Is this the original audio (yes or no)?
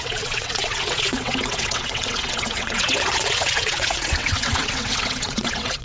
no